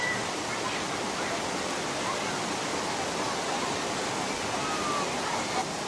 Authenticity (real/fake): real